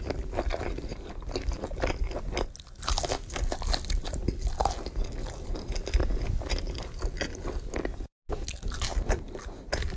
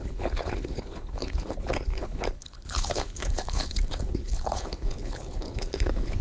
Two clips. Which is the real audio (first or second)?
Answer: first